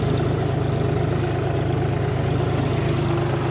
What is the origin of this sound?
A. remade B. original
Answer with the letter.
B